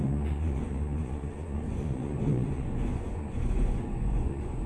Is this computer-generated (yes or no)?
yes